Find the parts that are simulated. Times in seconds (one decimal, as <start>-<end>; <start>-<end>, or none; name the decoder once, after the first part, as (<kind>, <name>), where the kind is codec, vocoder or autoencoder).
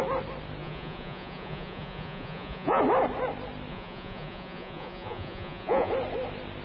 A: 0.6-2.8 (vocoder, Vocos); 3.7-5.9